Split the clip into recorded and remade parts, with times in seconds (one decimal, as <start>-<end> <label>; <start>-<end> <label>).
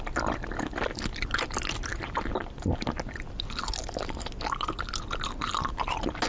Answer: 0.0-6.3 recorded